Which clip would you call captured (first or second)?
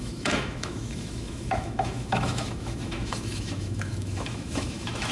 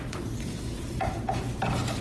second